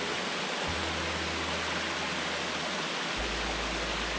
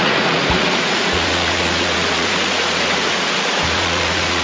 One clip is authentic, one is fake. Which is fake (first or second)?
second